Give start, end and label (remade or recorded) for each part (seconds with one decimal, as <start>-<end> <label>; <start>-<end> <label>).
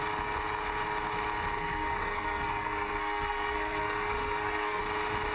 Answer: 0.0-1.6 recorded; 1.6-4.8 remade; 4.8-5.3 recorded